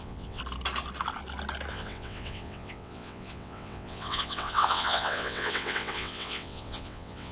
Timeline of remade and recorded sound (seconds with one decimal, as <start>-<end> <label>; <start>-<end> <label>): 0.0-0.4 remade; 0.4-1.7 recorded; 1.7-7.3 remade